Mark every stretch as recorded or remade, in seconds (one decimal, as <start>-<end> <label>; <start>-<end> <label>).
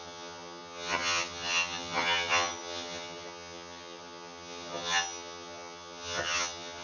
0.0-6.8 remade